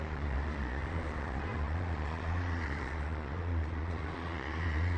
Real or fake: fake